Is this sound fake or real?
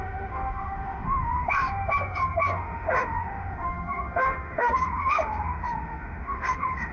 fake